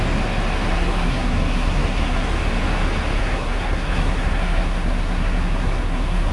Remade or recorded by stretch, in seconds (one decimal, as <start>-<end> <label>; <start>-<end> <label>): 0.0-0.7 recorded; 0.7-2.3 remade; 2.3-3.2 recorded; 3.2-6.3 remade